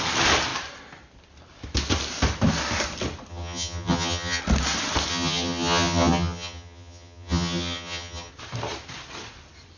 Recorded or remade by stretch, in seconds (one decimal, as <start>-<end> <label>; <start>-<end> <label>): 0.0-3.3 recorded; 3.3-4.4 remade; 4.4-5.1 recorded; 5.1-8.3 remade; 8.3-9.8 recorded